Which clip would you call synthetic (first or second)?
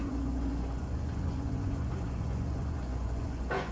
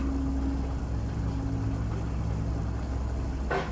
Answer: first